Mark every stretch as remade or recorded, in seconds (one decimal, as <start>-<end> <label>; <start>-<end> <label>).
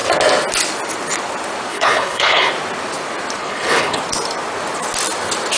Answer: 0.0-1.7 recorded; 1.7-2.5 remade; 2.5-3.4 recorded; 3.4-4.0 remade; 4.0-5.6 recorded